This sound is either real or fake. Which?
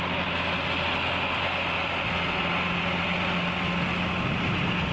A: real